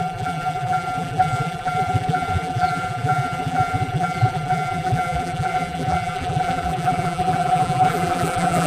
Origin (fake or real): fake